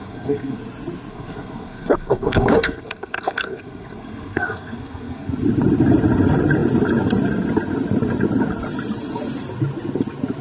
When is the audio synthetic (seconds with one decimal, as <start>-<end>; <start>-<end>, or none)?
0.0-0.6; 1.1-5.3